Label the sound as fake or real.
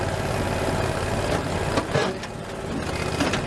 real